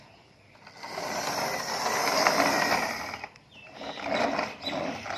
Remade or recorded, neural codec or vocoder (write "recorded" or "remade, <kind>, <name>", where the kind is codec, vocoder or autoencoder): remade, vocoder, BigVGAN v2